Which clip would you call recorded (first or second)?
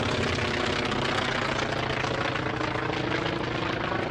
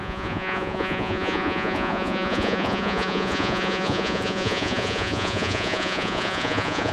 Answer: first